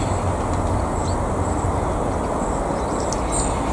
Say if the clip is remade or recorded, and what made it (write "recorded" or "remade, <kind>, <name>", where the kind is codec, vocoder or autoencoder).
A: recorded